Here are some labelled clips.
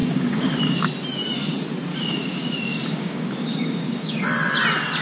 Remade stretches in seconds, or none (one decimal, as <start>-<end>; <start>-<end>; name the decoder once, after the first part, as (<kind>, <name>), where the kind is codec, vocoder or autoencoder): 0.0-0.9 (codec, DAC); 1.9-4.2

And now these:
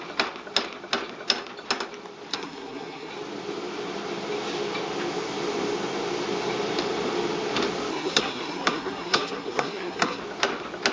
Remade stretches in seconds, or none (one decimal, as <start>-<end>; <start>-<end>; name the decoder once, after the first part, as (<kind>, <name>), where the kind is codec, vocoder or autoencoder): 2.3-3.1 (codec, SNAC); 7.9-10.2

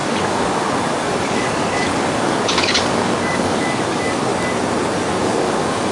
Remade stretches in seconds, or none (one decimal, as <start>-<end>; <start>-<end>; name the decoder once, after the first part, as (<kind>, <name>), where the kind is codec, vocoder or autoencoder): 0.0-4.3 (codec, DAC); 5.2-5.9